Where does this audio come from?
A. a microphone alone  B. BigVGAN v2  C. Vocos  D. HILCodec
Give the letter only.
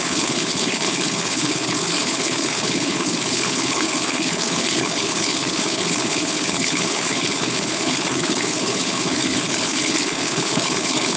D